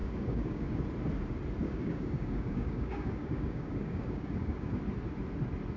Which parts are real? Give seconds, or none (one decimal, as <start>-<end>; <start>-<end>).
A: 0.8-1.6; 4.8-5.8